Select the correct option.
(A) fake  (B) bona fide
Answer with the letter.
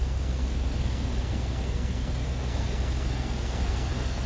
A